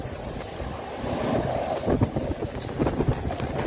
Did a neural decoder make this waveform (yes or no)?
no